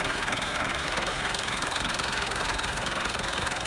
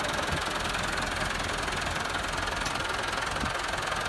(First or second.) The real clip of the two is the second